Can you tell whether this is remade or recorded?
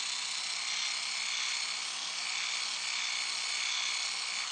recorded